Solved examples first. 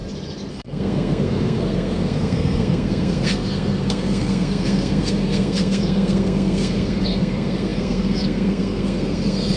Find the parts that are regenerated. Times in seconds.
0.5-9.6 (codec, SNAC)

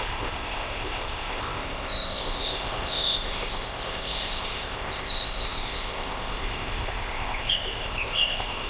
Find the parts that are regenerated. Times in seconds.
0.0-8.7 (codec, ZipCodec)

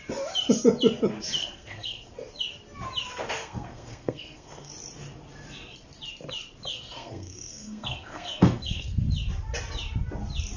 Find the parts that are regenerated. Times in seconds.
1.4-2.1 (codec, SNAC); 3.4-4.7; 6.7-9.0

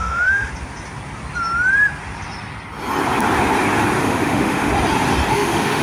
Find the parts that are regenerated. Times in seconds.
0.0-0.5 (autoencoder, DAC-VAE); 4.0-4.7; 5.3-5.8

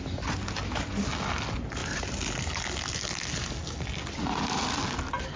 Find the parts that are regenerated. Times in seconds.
none